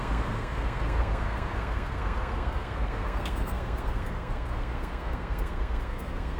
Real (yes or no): no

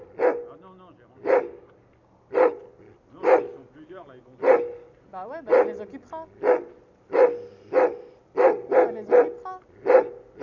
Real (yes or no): yes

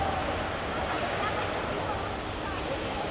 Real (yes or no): yes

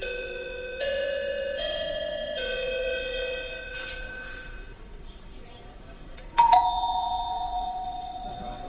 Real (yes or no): no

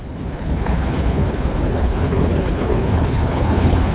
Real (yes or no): no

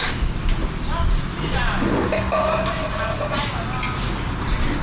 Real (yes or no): yes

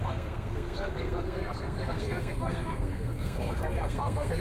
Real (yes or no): no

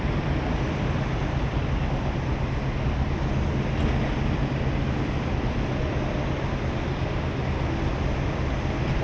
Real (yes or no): yes